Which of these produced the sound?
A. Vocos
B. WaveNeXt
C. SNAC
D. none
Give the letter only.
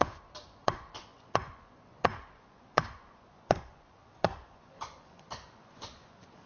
A